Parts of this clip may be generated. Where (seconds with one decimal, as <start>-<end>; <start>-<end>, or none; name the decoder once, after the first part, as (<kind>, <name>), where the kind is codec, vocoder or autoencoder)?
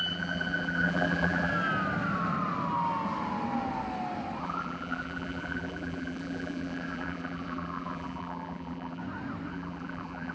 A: 0.0-1.5 (vocoder, BigVGAN v2); 4.4-9.0; 9.5-10.3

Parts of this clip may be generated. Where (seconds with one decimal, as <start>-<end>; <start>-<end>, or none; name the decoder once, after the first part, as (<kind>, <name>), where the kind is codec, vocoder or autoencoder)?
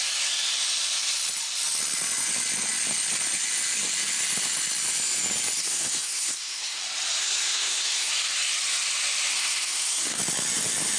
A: 5.6-6.8 (codec, SNAC); 7.2-8.1; 9.3-10.2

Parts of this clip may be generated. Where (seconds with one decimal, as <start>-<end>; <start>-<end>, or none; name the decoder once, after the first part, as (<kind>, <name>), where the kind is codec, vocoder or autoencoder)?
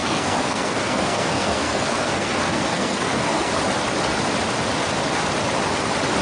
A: 0.0-3.5 (codec, SNAC)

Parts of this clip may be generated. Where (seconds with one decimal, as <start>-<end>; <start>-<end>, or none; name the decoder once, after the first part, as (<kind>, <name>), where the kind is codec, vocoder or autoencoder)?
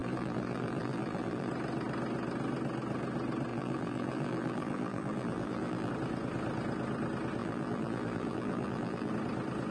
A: 0.0-1.5 (vocoder, BigVGAN v2); 3.5-5.9; 7.4-9.1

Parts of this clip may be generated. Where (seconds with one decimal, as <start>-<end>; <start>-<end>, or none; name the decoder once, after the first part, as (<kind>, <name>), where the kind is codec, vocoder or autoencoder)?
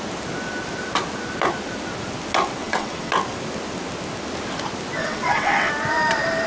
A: 2.6-3.1 (vocoder, WaveNeXt); 5.0-5.7